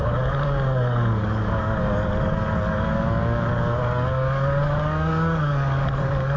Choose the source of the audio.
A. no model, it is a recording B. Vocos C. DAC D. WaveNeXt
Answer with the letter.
C